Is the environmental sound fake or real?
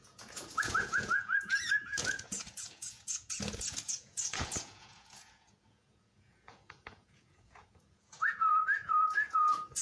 fake